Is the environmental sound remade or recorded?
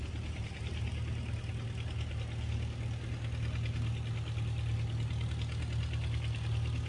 recorded